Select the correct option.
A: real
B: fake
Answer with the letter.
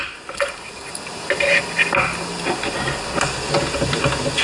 A